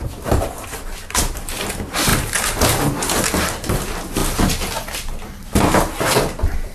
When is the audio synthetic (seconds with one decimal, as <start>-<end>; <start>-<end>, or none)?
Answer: none